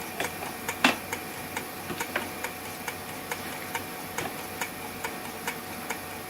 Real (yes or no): yes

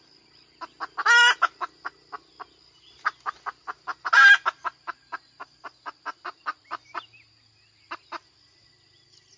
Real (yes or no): yes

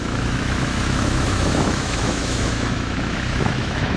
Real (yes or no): no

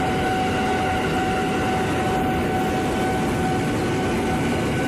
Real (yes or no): yes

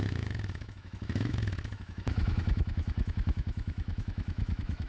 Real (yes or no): no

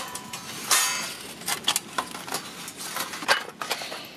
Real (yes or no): yes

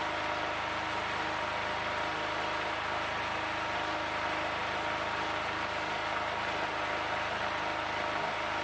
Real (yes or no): yes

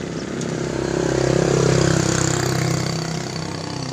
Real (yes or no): yes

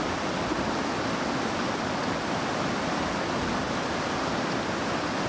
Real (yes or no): yes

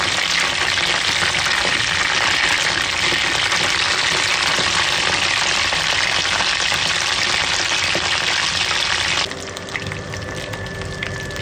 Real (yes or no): yes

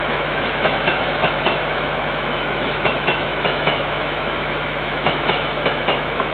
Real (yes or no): no